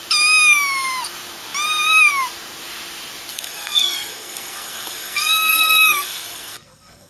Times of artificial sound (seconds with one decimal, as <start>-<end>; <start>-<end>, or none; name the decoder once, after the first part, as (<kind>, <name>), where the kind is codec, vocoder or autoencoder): 3.3-7.1 (codec, SNAC)

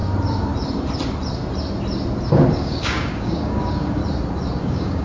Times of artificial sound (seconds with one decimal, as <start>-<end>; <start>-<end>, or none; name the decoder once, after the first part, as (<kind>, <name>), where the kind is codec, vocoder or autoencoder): 2.5-4.0 (codec, DAC); 4.6-5.0

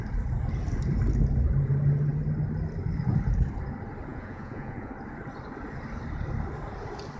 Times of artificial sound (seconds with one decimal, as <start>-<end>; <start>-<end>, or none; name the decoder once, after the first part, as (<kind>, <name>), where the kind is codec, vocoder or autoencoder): 4.1-4.9 (vocoder, Vocos)